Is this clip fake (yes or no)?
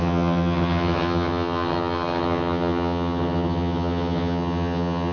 yes